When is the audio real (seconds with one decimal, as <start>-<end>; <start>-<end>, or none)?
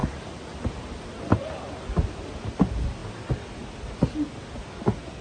0.0-5.2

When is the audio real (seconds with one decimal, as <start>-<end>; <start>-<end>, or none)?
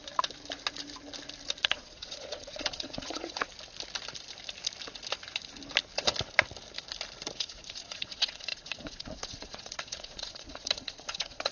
0.0-1.6; 3.5-7.4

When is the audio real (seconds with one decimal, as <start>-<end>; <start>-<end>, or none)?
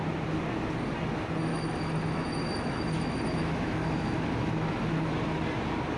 0.0-1.5; 5.1-6.0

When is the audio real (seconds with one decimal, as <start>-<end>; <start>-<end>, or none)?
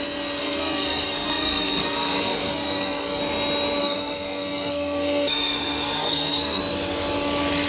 0.0-0.4; 3.2-3.8; 6.6-7.7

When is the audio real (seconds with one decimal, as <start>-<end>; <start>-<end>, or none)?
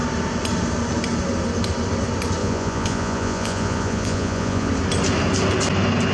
0.0-2.4; 4.7-6.1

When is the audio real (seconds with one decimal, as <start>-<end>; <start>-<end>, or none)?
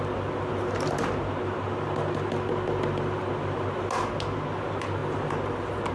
0.0-5.9